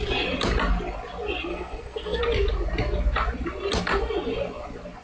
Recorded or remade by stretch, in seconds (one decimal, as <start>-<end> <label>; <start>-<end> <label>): 0.0-1.5 recorded; 1.5-2.2 remade; 2.2-5.0 recorded